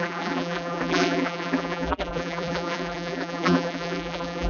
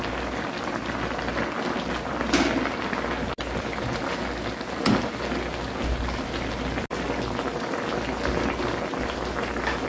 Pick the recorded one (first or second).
second